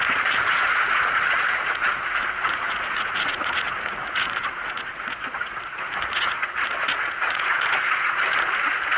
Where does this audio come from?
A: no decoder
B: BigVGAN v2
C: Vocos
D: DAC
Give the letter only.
C